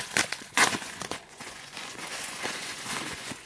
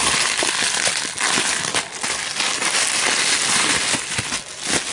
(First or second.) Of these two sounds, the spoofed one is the first